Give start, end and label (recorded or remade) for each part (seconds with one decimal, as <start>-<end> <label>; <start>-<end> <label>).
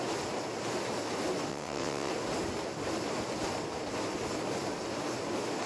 0.0-1.5 recorded; 1.5-2.1 remade; 2.1-5.7 recorded